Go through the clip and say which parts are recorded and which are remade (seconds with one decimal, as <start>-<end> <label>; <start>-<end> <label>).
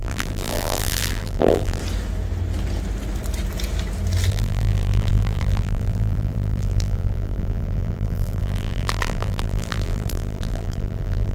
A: 0.0-1.8 remade; 1.8-4.3 recorded; 4.3-11.3 remade